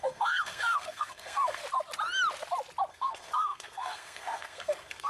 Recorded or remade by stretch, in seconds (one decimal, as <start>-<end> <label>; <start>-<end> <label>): 0.0-1.6 remade; 1.6-2.9 recorded; 2.9-5.1 remade